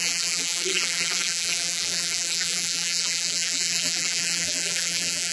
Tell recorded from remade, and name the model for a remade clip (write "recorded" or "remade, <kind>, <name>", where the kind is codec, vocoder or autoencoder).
remade, vocoder, BigVGAN v2